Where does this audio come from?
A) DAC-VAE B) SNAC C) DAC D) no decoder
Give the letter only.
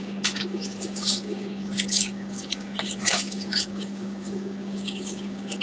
C